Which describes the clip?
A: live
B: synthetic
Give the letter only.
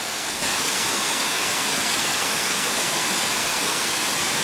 B